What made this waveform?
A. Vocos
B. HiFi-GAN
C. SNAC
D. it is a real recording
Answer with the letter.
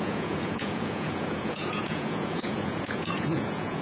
A